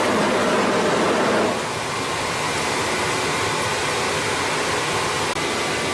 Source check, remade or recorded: recorded